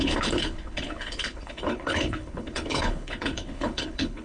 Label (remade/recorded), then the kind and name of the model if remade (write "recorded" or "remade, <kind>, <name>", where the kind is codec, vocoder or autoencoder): remade, codec, HILCodec